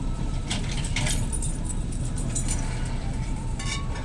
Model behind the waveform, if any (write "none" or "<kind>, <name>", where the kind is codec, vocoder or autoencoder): vocoder, BigVGAN v2